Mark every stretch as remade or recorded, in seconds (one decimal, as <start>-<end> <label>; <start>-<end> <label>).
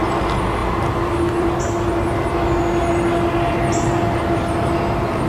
0.0-0.6 recorded; 0.6-1.5 remade; 1.5-5.3 recorded